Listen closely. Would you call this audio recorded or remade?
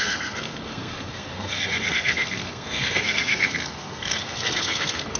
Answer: remade